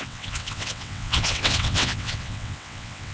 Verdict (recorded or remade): remade